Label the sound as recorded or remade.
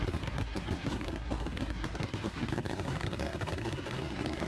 remade